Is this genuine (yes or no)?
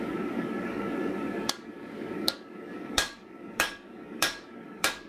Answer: no